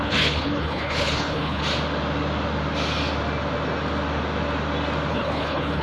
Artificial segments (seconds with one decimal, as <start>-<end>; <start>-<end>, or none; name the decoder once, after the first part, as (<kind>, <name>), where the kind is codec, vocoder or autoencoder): 0.0-1.6 (codec, HILCodec); 5.1-5.8